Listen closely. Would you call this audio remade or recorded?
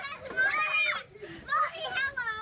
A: recorded